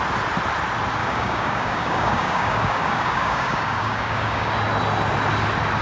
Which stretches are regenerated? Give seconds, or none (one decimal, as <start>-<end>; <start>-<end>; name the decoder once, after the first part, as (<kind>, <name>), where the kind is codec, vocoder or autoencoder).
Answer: 1.0-4.5 (codec, DAC)

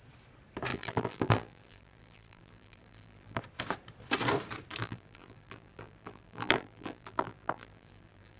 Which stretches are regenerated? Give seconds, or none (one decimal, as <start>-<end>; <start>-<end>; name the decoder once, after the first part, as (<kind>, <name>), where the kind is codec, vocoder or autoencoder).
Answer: 0.7-3.4 (vocoder, BigVGAN v2); 4.8-8.4

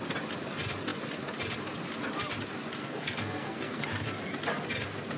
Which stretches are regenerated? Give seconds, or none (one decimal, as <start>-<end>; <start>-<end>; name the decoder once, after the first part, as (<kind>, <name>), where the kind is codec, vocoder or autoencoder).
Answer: 2.8-3.8 (codec, SNAC)

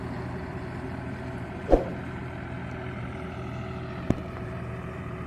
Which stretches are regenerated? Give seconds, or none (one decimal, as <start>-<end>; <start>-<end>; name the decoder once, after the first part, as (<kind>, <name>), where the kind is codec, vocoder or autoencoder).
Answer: 4.2-5.3 (vocoder, BigVGAN v2)